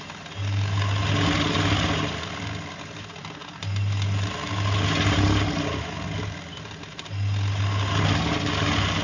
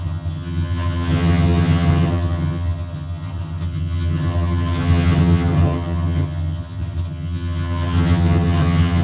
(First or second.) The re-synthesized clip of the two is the second